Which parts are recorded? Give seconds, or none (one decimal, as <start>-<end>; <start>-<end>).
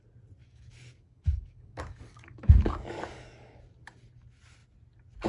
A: 0.0-0.4; 3.6-5.3